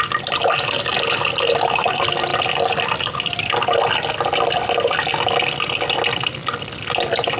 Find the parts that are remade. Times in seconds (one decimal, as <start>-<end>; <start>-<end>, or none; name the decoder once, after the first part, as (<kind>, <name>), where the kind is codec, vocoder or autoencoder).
none

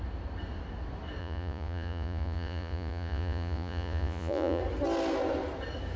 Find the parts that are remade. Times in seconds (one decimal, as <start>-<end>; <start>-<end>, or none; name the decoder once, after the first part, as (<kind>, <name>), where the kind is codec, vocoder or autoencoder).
1.2-4.6 (vocoder, Vocos)

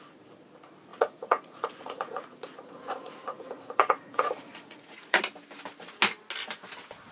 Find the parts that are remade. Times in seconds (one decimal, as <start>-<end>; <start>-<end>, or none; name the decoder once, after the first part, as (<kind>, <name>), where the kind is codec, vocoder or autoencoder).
0.9-5.2 (vocoder, Vocos)

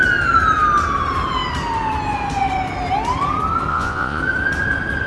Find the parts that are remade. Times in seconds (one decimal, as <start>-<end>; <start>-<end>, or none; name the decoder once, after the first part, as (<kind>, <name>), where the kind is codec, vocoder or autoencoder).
3.7-4.2 (vocoder, Vocos)

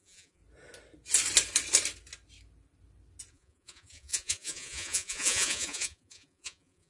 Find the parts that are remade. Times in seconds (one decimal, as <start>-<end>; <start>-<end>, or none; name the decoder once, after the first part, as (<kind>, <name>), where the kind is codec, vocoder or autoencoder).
0.0-0.4 (vocoder, Vocos); 3.3-6.9

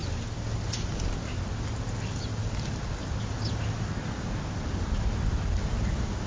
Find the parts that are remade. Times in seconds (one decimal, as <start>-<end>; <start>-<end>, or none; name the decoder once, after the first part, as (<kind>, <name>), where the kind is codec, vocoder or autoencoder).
none

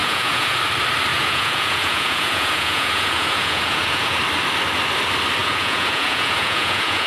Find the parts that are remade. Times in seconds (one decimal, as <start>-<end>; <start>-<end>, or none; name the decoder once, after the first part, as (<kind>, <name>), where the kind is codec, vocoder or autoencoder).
0.0-0.6 (vocoder, Vocos); 1.1-4.2; 5.4-7.1

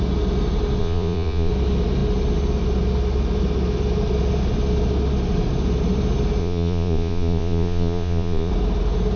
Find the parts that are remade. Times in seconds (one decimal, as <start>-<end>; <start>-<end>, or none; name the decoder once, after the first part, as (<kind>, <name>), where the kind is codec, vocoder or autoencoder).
0.8-1.5 (vocoder, Vocos); 6.4-8.5